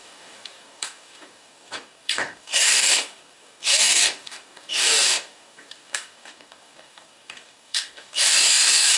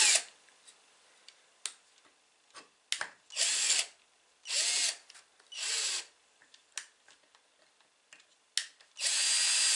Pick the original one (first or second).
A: second